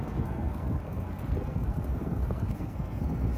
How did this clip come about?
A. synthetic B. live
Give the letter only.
A